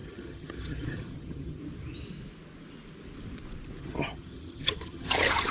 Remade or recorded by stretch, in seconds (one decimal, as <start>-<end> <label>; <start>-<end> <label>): 0.0-1.6 remade; 1.6-3.8 recorded; 3.8-5.5 remade